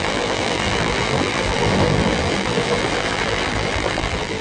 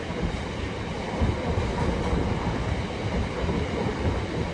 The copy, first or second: first